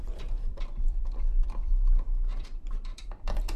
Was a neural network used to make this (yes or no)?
yes